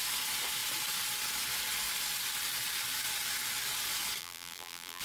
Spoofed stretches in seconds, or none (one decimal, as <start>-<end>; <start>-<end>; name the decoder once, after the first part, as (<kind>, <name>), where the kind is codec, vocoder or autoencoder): 4.2-5.0 (vocoder, BigVGAN v2)